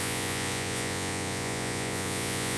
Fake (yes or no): yes